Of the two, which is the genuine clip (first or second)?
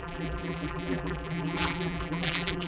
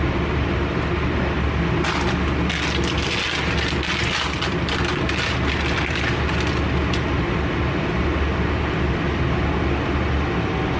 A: second